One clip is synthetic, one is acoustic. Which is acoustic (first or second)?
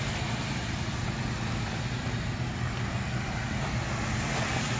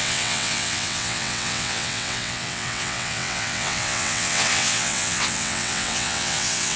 first